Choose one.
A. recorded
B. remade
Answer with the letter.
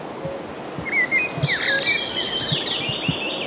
A